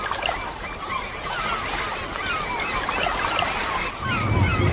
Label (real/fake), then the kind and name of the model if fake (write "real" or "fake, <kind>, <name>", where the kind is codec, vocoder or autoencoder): fake, vocoder, BigVGAN v2